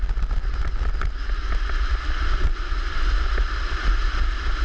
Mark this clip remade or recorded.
recorded